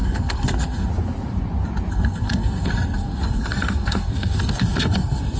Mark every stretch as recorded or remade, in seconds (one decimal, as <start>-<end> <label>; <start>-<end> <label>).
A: 0.0-0.9 remade; 0.9-1.9 recorded; 1.9-5.4 remade